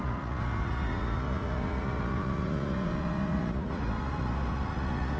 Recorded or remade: remade